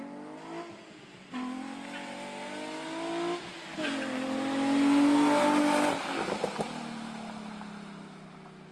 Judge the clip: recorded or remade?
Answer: recorded